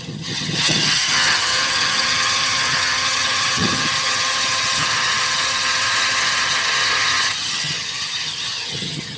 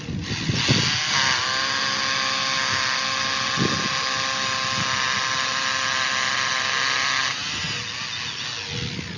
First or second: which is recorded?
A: second